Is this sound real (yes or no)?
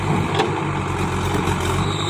yes